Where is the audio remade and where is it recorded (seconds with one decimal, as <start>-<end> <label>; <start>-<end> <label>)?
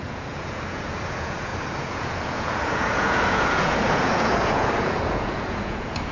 0.0-6.1 remade